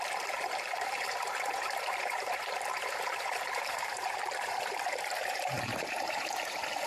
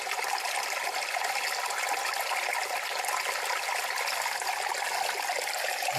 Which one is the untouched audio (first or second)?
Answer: second